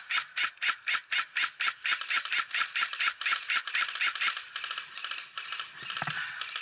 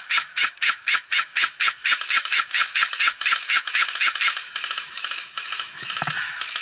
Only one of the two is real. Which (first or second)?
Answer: first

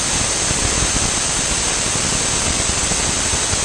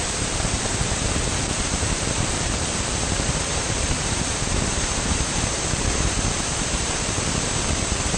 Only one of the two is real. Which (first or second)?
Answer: first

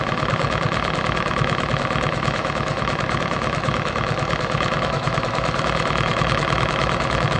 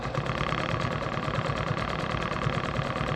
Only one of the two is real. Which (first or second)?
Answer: second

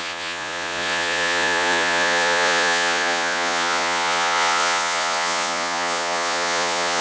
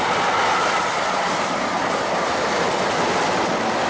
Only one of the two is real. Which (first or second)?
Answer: second